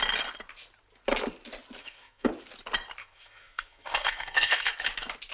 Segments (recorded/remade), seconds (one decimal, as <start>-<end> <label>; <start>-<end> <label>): 0.0-1.8 recorded; 1.8-2.3 remade; 2.3-3.0 recorded; 3.0-4.7 remade; 4.7-5.3 recorded